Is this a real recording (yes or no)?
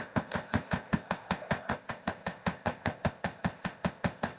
no